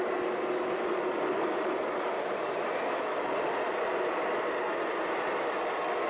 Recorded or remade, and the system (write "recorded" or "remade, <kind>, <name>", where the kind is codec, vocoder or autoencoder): recorded